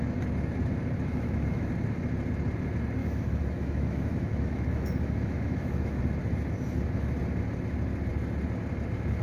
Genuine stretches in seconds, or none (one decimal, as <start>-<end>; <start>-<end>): 0.0-1.1; 1.7-3.0; 6.0-9.2